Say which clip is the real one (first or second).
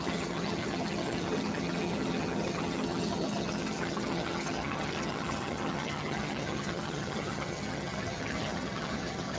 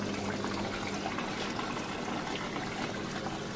second